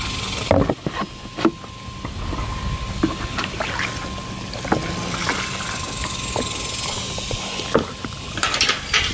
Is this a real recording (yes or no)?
yes